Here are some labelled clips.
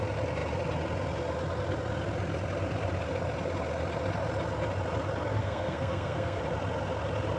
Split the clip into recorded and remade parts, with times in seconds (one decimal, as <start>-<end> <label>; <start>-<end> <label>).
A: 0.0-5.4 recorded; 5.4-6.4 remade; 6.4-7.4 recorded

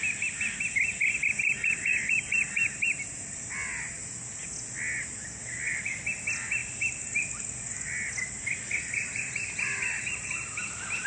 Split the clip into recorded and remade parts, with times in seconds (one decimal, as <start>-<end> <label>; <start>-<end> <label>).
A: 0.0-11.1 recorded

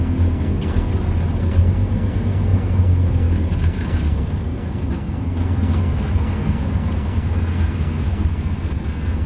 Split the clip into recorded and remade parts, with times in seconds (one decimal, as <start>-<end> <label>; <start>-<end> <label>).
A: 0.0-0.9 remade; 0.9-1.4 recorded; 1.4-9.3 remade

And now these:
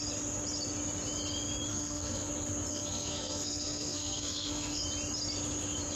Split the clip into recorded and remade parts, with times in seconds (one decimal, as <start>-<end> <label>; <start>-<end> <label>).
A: 0.0-1.7 recorded; 1.7-2.3 remade; 2.3-2.7 recorded; 2.7-4.8 remade; 4.8-6.0 recorded

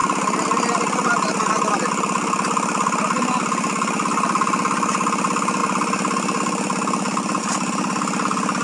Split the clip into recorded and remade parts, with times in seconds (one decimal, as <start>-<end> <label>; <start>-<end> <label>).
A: 0.0-8.6 recorded

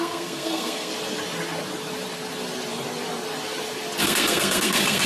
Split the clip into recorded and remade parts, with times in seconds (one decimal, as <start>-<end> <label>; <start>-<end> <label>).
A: 0.0-0.9 remade; 0.9-4.0 recorded; 4.0-5.1 remade